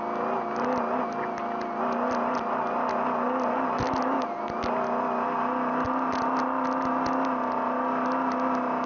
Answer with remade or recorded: recorded